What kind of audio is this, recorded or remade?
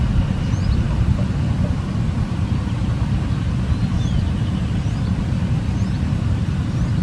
recorded